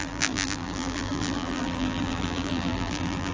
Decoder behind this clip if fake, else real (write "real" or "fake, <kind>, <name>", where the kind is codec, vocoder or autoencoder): fake, vocoder, BigVGAN v2